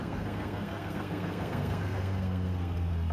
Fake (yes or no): yes